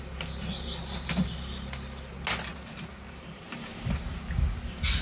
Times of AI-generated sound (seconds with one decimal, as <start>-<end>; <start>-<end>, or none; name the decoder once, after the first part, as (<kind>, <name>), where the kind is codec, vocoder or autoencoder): 2.5-4.3 (vocoder, BigVGAN v2)